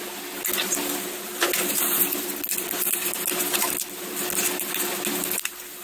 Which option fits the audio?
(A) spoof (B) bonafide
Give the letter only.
B